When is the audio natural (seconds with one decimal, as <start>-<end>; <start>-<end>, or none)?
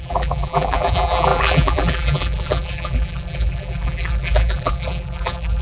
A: none